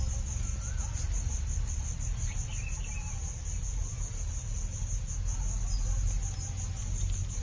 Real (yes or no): yes